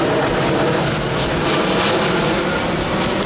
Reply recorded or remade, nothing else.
recorded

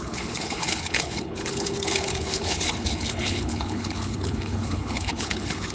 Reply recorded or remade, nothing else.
remade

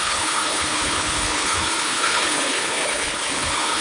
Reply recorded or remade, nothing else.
remade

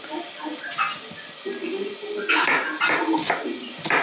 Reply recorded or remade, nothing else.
recorded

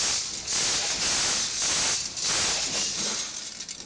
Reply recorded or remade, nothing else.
recorded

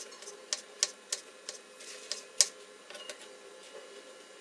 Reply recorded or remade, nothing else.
recorded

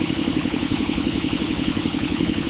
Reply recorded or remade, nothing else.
remade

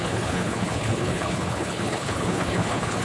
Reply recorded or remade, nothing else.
remade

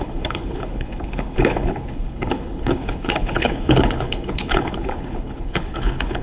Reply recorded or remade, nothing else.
remade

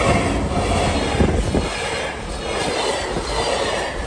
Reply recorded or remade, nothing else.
recorded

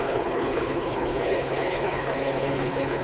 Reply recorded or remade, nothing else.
remade